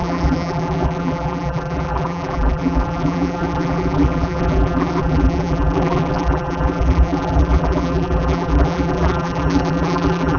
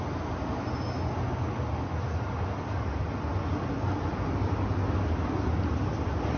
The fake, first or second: first